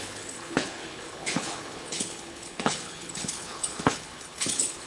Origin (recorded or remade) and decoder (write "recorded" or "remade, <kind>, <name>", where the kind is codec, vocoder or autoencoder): remade, codec, HILCodec